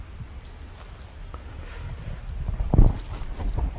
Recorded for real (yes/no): yes